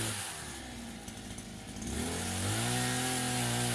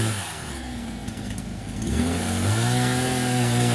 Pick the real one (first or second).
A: first